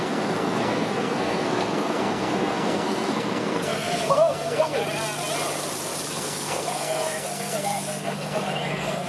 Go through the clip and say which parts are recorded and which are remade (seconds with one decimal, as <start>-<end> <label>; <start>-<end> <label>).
0.0-4.8 remade; 4.8-6.1 recorded; 6.1-9.1 remade